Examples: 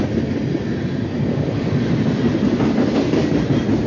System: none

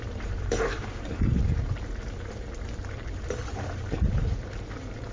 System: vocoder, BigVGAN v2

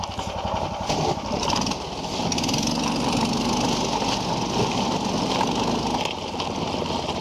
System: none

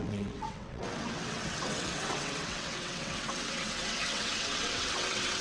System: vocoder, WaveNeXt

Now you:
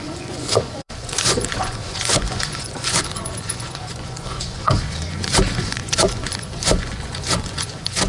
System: vocoder, Vocos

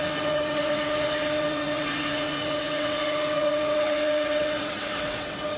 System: vocoder, WaveNeXt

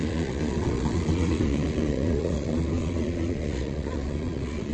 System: vocoder, Vocos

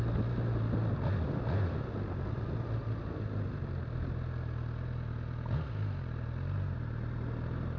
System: none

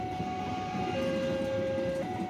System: none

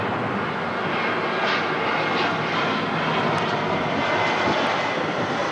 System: none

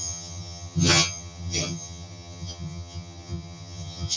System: vocoder, HiFi-GAN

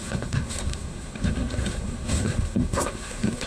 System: codec, SNAC